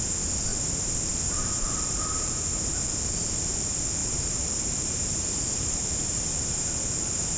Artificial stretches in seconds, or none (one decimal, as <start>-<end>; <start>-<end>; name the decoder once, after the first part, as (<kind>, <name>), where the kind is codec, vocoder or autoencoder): 0.5-2.6 (vocoder, BigVGAN v2); 4.0-7.4